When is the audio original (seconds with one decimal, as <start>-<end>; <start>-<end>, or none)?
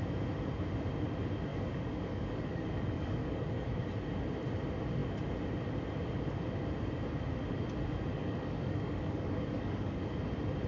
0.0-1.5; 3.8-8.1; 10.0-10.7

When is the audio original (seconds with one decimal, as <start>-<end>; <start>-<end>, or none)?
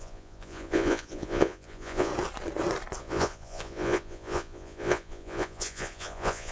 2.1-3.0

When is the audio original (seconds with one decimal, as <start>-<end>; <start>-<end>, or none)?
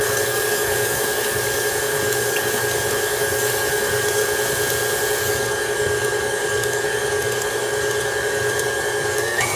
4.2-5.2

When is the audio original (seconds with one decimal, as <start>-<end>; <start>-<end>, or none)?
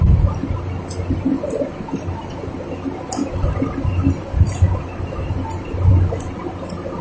0.0-7.0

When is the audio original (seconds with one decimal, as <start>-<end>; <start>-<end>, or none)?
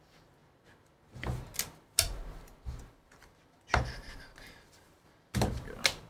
0.4-2.9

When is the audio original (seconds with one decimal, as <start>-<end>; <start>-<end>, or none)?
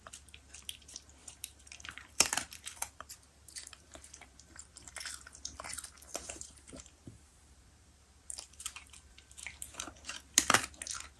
0.0-1.2; 4.9-6.1; 9.2-11.2